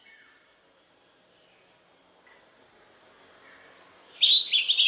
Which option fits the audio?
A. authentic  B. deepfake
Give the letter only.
A